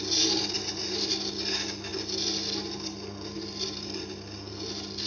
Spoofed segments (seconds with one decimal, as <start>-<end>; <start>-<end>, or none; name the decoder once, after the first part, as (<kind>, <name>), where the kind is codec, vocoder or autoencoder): none